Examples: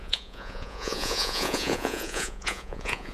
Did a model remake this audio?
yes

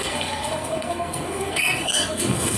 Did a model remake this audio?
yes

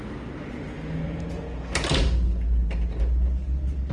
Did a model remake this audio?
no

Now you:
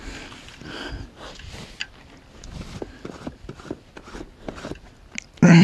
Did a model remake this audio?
no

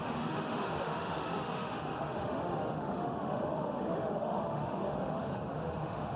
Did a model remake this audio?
yes